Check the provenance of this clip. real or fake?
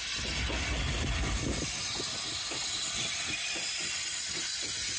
real